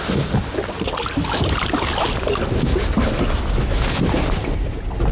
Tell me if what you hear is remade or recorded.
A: recorded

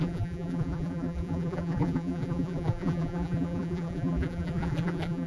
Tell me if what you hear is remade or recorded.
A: remade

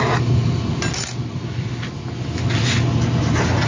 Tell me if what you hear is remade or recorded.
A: recorded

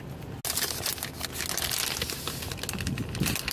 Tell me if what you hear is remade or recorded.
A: recorded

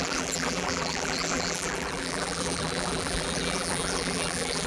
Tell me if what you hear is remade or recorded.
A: remade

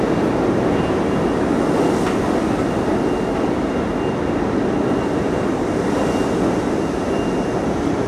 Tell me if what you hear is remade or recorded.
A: recorded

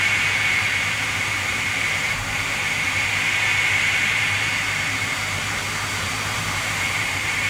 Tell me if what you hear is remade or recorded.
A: remade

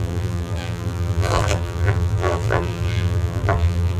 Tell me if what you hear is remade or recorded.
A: remade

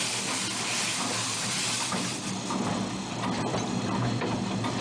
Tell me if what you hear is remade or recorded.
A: recorded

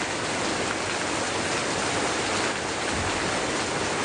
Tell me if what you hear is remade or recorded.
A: recorded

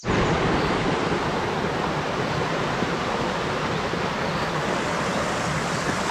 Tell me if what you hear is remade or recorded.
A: recorded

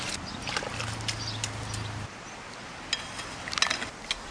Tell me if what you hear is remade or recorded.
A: recorded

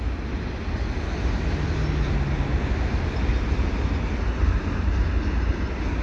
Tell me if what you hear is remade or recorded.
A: recorded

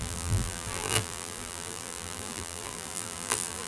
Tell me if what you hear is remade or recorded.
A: remade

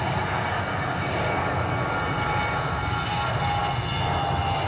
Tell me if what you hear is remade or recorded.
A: recorded